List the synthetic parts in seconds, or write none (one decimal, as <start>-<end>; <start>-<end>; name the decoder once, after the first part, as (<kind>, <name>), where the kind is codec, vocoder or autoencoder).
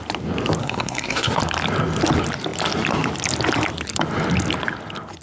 0.6-1.4 (codec, SNAC)